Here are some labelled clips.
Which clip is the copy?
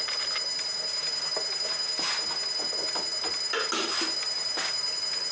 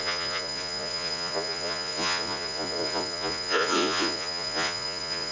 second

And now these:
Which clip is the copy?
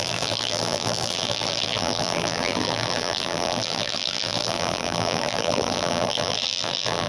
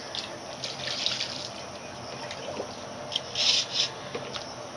first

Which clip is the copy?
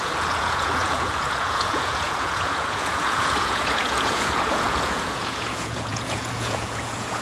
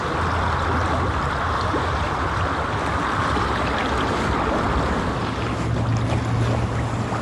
first